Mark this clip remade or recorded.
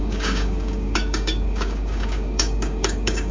remade